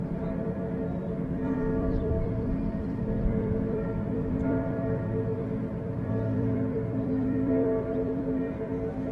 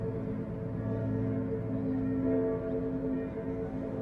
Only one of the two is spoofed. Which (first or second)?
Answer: first